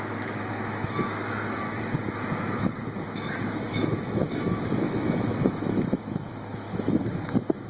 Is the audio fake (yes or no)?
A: yes